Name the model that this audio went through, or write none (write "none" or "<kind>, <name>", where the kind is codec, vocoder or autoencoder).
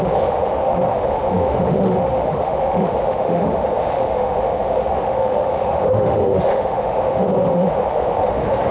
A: autoencoder, DAC-VAE